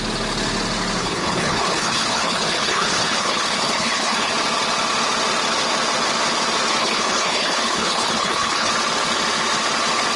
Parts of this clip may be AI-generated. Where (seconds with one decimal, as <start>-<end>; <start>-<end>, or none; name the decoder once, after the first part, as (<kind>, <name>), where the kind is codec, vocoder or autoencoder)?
1.0-4.3 (codec, HILCodec); 6.8-8.7